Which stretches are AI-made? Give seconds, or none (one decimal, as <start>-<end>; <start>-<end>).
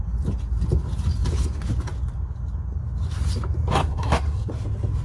3.8-4.5